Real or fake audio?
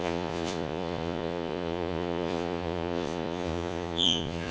fake